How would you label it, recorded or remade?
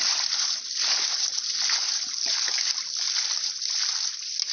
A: recorded